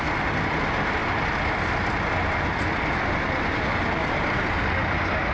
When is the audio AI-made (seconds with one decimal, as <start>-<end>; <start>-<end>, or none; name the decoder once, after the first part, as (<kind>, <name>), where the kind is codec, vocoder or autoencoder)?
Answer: 4.0-4.7 (vocoder, BigVGAN v2)